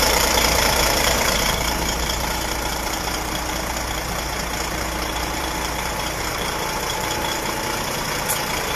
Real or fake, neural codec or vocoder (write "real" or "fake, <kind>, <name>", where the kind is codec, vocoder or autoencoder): fake, vocoder, BigVGAN v2